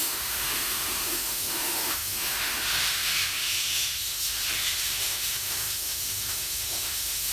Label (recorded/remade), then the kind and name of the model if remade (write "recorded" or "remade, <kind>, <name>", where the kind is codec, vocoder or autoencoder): remade, autoencoder, DAC-VAE